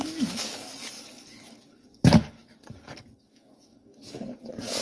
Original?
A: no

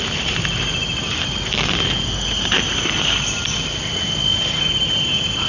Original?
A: yes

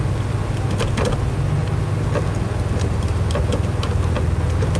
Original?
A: yes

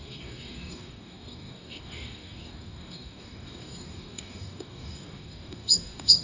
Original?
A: no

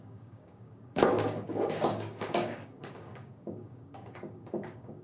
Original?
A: no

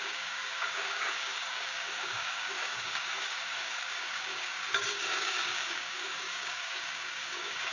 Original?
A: no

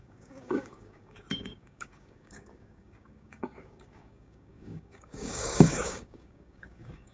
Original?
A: no